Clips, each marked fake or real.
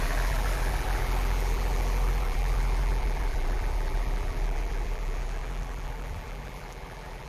fake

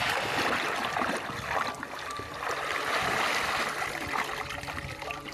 real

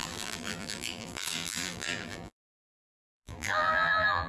fake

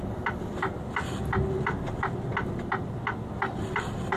real